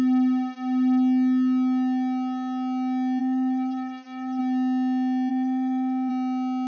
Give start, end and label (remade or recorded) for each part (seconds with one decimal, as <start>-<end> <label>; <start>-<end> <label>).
0.0-3.2 recorded; 3.2-4.4 remade; 4.4-5.3 recorded; 5.3-6.1 remade; 6.1-6.7 recorded